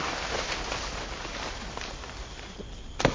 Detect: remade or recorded remade